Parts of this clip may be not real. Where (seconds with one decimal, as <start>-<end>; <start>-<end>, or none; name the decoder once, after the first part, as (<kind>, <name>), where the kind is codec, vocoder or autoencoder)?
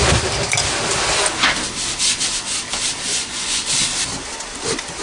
3.1-3.7 (vocoder, Vocos)